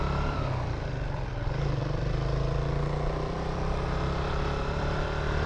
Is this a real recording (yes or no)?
no